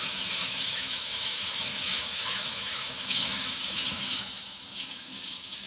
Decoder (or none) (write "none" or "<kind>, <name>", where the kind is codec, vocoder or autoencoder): autoencoder, DAC-VAE